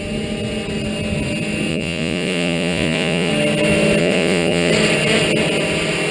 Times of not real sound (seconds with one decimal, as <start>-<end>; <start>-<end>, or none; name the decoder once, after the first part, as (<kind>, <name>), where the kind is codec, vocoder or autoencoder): 1.7-3.3 (vocoder, Vocos); 4.0-4.7